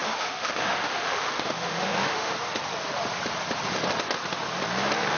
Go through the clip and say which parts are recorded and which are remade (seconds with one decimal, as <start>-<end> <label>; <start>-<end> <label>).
0.0-2.3 remade; 2.3-5.2 recorded